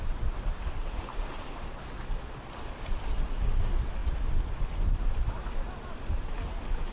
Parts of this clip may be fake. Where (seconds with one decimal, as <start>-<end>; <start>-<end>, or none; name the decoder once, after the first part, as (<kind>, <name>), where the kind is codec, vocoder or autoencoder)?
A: none